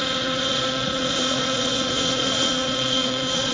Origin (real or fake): fake